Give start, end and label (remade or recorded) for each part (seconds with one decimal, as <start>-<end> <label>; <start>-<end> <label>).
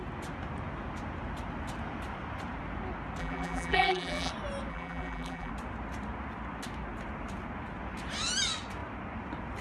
0.0-3.2 recorded; 3.2-4.3 remade; 4.3-4.7 recorded; 4.7-5.5 remade; 5.5-9.6 recorded